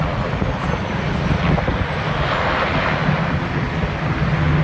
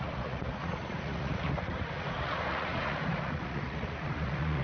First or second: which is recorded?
first